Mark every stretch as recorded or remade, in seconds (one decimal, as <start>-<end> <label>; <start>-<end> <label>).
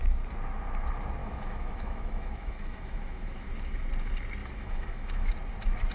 0.0-1.2 recorded; 1.2-3.5 remade; 3.5-4.4 recorded; 4.4-5.3 remade; 5.3-5.9 recorded